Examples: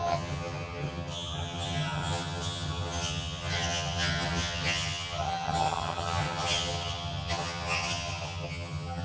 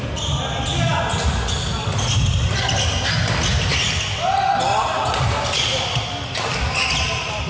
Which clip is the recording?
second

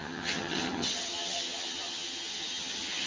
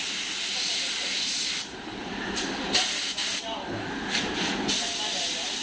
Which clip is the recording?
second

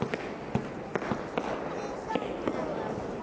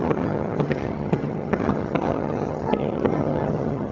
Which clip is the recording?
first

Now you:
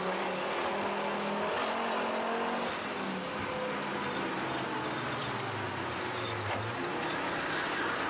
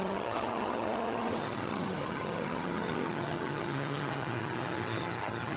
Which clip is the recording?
first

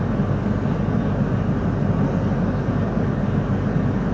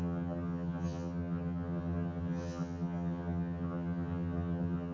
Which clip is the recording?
first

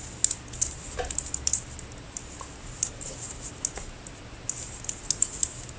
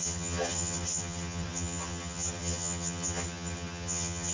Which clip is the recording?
first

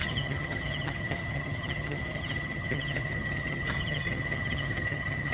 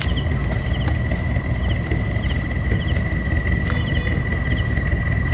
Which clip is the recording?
second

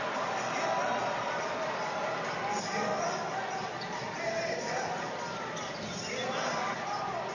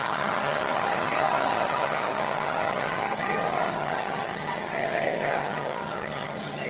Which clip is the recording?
first